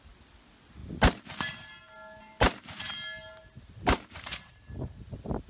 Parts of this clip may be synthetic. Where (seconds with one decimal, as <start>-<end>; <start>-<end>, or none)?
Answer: none